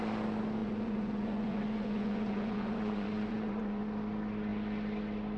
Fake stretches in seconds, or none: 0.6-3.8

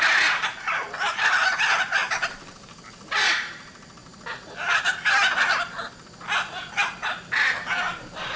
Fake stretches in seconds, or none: none

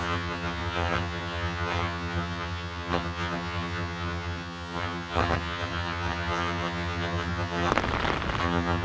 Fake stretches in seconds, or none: 0.0-7.7; 8.4-8.8

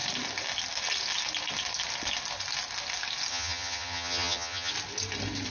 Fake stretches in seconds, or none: 3.3-4.7

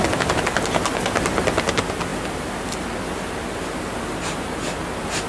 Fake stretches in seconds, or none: none

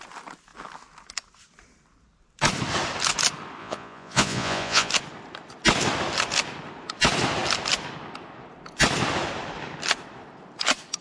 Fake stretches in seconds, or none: 3.6-4.9